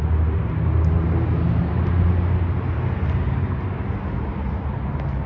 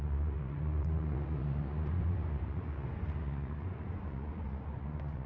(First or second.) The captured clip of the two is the first